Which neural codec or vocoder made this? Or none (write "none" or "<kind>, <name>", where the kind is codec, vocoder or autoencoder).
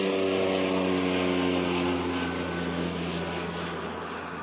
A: none